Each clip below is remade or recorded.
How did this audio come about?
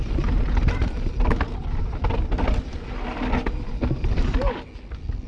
recorded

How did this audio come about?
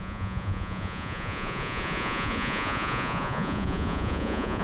remade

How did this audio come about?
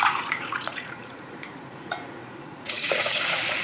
remade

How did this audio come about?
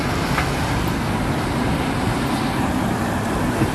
recorded